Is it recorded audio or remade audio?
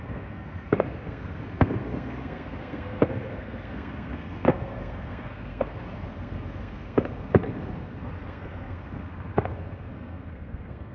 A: remade